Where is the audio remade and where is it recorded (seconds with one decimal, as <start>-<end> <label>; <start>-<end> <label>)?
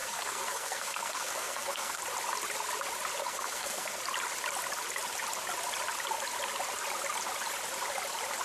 0.0-2.0 remade; 2.0-3.2 recorded; 3.2-4.0 remade; 4.0-8.4 recorded